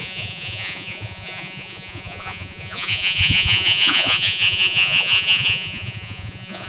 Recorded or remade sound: remade